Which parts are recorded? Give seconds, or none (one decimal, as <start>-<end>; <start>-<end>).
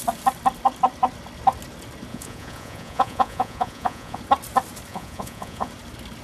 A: 0.0-2.1; 4.2-4.9; 5.7-6.2